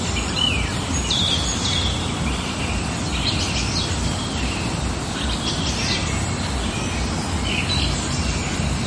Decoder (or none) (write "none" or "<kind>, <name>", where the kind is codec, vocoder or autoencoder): none